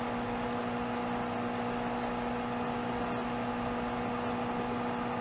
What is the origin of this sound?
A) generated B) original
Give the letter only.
B